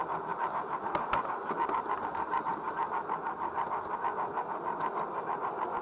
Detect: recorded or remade recorded